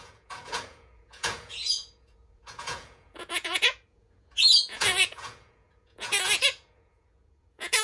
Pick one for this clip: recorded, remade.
remade